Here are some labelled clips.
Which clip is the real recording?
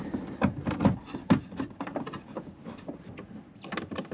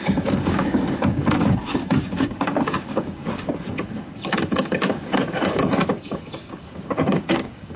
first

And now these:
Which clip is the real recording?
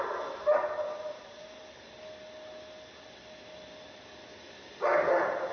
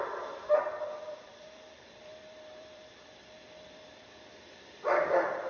first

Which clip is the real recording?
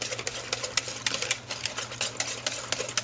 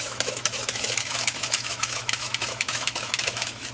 first